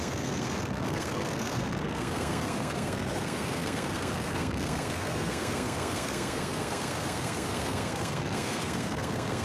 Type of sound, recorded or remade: remade